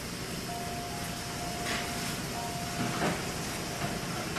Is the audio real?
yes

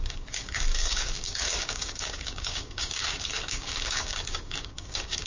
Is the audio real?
no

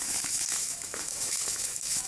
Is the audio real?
no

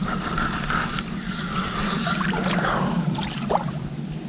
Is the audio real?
no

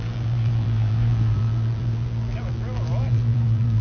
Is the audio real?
no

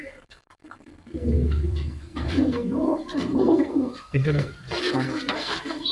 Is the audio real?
no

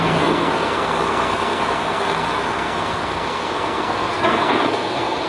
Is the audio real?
no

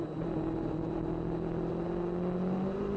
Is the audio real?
yes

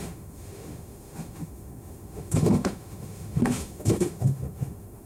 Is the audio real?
no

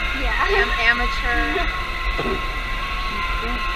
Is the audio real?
yes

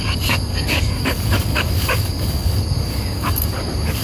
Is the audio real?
no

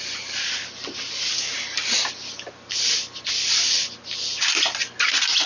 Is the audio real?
yes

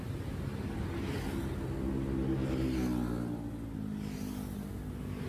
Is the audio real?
yes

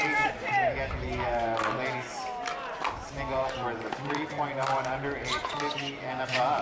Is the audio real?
yes